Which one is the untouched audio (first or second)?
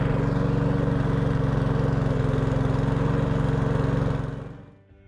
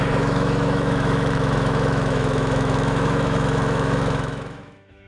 first